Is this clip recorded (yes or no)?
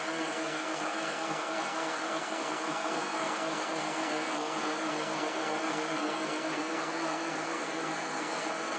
no